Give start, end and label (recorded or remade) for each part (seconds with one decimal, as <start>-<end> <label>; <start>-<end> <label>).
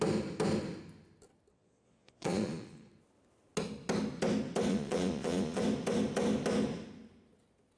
0.0-1.5 recorded; 1.5-2.9 remade; 2.9-4.7 recorded; 4.7-5.6 remade; 5.6-7.8 recorded